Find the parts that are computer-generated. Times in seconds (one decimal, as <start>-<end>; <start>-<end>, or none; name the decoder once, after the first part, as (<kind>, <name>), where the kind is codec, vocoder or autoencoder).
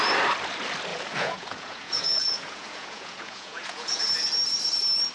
0.9-4.0 (vocoder, Vocos)